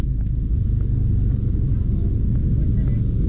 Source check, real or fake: real